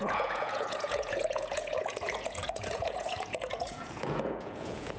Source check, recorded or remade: remade